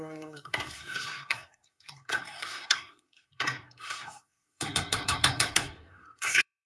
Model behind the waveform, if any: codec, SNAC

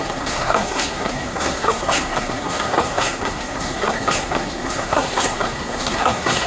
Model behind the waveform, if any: codec, SNAC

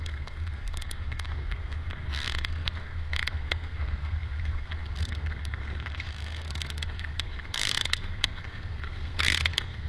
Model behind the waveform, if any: codec, SNAC